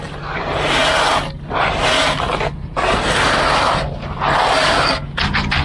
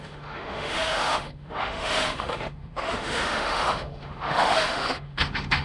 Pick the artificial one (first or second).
second